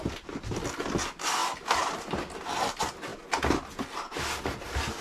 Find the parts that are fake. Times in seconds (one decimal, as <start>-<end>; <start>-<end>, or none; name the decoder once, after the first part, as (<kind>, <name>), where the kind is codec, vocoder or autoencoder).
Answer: none